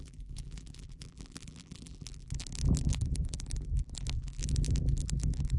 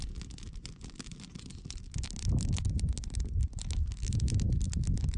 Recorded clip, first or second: second